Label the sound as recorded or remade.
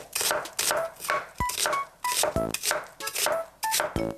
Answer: recorded